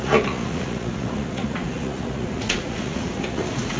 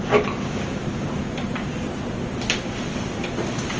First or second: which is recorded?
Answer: second